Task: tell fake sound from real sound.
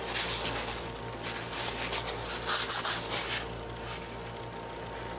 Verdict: real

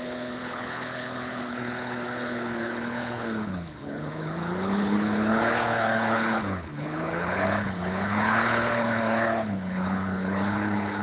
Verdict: fake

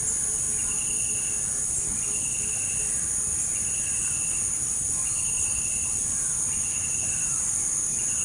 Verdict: real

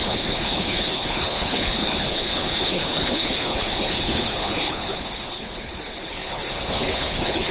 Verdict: fake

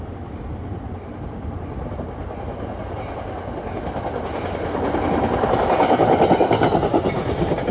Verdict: real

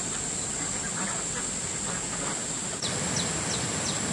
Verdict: real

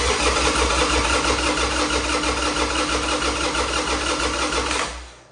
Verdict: real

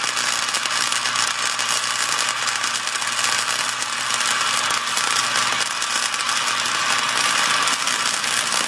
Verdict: real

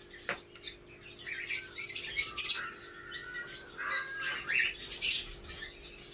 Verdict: real